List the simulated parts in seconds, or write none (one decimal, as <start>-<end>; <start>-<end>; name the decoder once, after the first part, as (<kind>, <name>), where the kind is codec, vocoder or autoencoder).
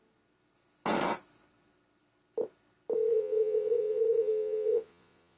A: 3.1-5.4 (vocoder, Vocos)